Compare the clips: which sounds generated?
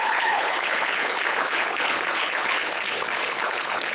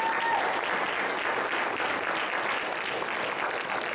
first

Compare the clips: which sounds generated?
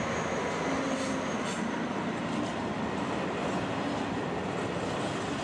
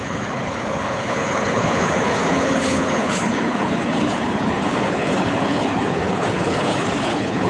second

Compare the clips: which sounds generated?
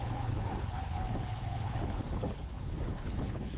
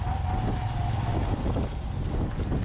first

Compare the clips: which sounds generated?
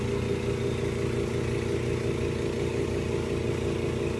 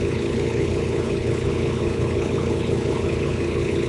second